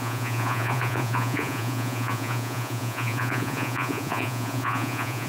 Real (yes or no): no